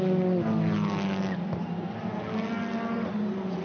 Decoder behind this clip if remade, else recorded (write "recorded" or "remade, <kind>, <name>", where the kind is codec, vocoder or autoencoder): recorded